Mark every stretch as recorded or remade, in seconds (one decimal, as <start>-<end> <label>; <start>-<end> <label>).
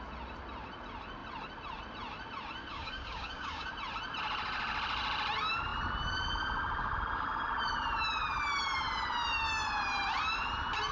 0.0-2.7 recorded; 2.7-3.7 remade; 3.7-10.9 recorded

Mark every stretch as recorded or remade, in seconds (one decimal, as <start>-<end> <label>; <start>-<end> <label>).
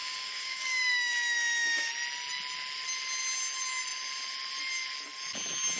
0.0-1.9 remade; 1.9-5.8 recorded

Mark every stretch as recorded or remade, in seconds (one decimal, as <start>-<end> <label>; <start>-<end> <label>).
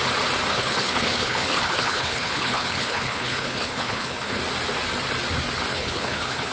0.0-0.5 recorded; 0.5-4.4 remade; 4.4-5.7 recorded; 5.7-6.5 remade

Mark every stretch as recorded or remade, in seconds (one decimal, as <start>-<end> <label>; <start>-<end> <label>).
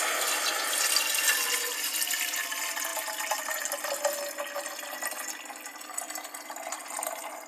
0.0-7.5 recorded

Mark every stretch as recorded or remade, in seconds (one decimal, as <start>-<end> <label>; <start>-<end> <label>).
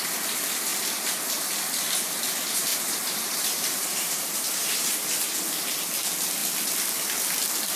0.0-2.7 recorded; 2.7-5.2 remade; 5.2-7.8 recorded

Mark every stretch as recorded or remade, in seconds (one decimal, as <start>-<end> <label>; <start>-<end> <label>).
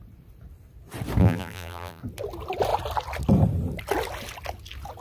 0.0-1.2 recorded; 1.2-2.0 remade; 2.0-5.0 recorded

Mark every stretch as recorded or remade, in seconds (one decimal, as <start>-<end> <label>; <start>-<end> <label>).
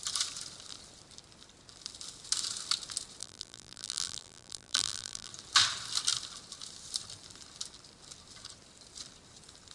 0.0-3.2 recorded; 3.2-5.3 remade; 5.3-9.7 recorded